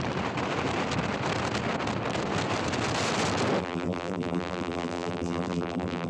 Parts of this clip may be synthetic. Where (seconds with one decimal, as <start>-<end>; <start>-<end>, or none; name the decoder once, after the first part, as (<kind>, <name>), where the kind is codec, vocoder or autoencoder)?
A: 3.6-6.1 (vocoder, BigVGAN v2)